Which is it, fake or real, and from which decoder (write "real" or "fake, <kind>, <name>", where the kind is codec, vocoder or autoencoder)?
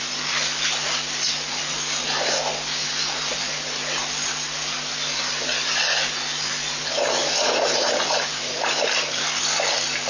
real